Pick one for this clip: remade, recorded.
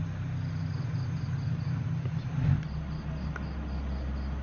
recorded